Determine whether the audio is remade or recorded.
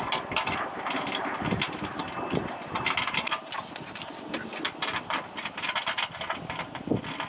recorded